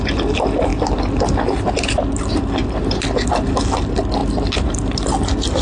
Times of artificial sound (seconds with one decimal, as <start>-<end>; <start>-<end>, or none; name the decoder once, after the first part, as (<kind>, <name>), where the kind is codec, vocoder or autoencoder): none